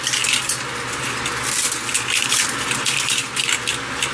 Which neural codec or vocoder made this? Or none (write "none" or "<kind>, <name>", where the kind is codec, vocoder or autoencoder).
none